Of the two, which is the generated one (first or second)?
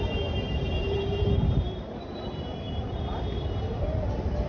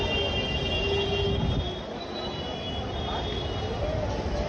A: first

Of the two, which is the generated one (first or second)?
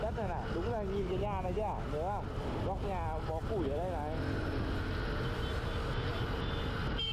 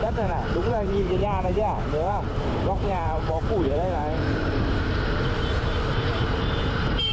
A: second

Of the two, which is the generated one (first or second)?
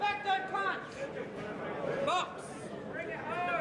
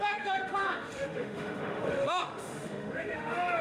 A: second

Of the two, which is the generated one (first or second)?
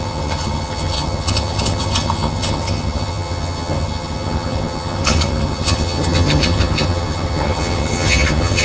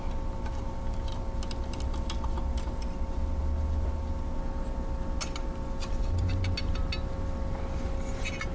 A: first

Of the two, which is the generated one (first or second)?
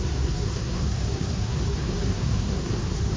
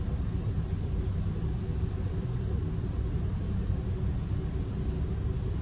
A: first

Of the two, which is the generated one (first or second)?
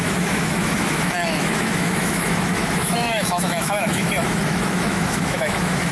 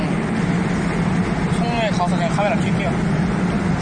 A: first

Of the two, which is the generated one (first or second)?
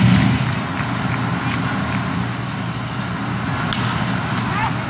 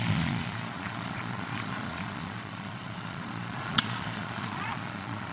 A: second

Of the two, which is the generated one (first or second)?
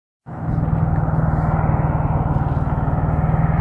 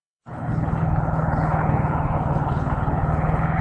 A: second